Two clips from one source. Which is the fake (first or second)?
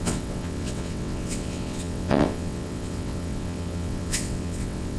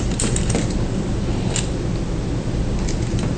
first